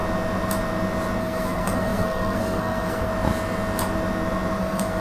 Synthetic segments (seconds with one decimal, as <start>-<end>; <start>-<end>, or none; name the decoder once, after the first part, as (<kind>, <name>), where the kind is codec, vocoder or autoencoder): 1.2-3.1 (codec, SNAC); 4.6-5.0